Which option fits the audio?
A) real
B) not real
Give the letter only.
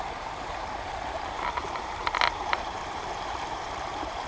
B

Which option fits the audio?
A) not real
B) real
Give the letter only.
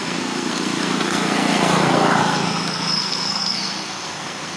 A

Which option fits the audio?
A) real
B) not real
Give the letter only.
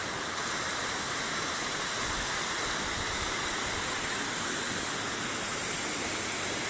A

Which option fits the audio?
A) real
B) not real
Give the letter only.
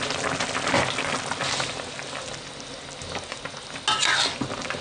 A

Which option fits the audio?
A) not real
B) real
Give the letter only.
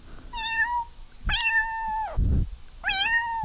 B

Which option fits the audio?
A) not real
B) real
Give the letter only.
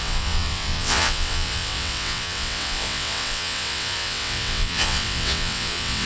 A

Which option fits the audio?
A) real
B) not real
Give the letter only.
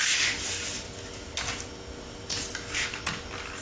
A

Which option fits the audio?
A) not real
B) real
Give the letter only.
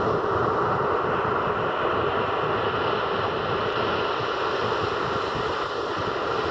B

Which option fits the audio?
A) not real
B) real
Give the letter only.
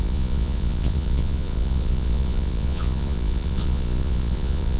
A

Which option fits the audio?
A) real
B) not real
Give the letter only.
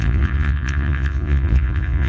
B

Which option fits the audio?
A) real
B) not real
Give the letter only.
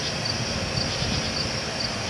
A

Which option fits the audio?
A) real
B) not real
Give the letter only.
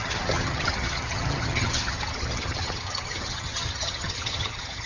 B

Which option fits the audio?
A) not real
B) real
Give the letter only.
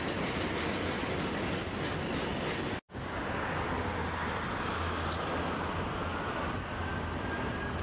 B